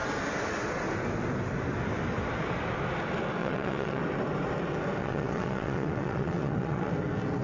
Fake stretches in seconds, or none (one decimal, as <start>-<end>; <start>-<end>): 3.4-4.0; 5.0-6.9